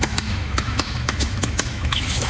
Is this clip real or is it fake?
fake